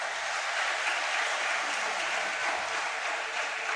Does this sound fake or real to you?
real